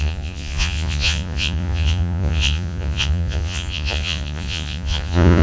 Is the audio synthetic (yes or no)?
yes